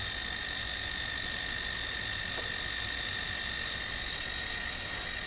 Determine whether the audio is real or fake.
real